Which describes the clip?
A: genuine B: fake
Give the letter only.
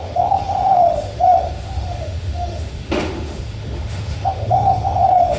B